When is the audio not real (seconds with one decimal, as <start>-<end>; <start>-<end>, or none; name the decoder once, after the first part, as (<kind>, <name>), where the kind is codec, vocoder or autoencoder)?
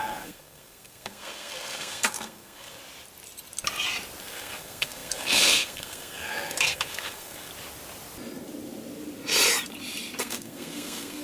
0.0-2.8 (codec, SNAC); 4.2-7.5; 10.2-11.2